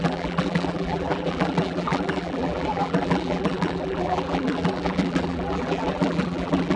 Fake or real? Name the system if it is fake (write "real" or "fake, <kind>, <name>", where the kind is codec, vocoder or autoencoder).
fake, vocoder, BigVGAN v2